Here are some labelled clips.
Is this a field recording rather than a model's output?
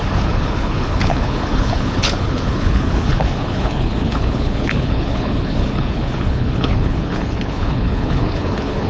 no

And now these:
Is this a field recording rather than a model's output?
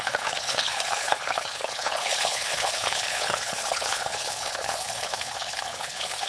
no